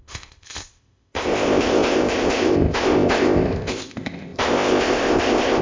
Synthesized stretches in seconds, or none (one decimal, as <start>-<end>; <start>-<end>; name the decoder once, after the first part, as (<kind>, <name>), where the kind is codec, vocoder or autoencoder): 0.0-5.6 (codec, ZipCodec)